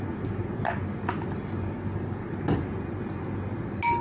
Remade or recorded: recorded